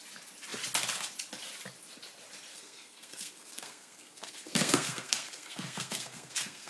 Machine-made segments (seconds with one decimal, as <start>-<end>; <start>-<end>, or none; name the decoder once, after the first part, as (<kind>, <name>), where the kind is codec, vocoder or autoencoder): 2.5-6.7 (codec, SNAC)